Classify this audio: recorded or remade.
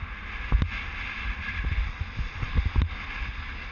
recorded